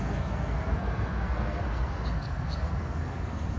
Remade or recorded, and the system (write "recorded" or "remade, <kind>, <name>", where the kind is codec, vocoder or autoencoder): remade, codec, SNAC